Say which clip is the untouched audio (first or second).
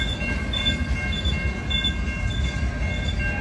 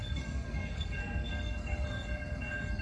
first